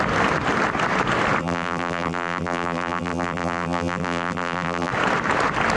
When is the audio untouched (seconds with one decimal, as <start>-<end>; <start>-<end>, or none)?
0.0-1.4; 4.9-5.8